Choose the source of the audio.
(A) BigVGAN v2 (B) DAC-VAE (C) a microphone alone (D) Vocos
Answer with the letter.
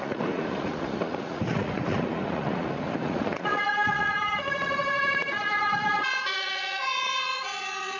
D